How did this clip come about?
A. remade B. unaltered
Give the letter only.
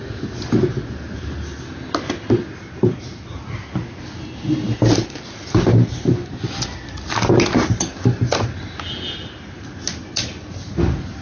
B